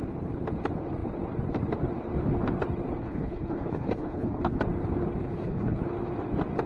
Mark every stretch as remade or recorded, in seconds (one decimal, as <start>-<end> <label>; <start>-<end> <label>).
0.0-3.0 recorded; 3.0-4.6 remade; 4.6-5.2 recorded; 5.2-5.8 remade; 5.8-6.7 recorded